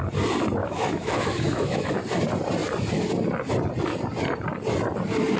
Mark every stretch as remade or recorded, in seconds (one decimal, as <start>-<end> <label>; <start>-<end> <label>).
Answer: 0.0-0.6 recorded; 0.6-1.9 remade; 1.9-5.4 recorded